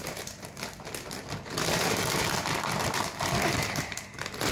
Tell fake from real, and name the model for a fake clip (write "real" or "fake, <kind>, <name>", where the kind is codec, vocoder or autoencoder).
fake, vocoder, BigVGAN v2